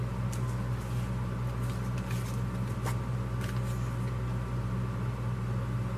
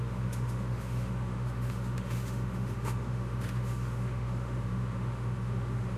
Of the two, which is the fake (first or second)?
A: second